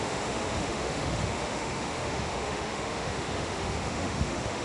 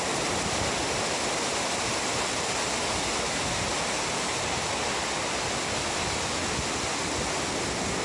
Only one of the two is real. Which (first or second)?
second